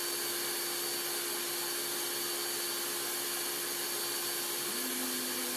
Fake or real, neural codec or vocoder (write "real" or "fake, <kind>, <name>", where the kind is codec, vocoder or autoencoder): real